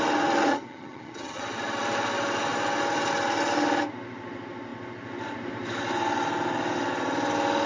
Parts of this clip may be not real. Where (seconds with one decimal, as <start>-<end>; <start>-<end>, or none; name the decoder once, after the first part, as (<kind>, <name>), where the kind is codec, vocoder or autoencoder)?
0.5-1.4 (vocoder, HiFi-GAN)